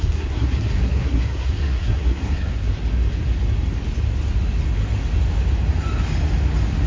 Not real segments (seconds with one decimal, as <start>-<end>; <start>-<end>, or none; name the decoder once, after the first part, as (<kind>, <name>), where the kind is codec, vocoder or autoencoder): 0.0-2.7 (codec, SNAC)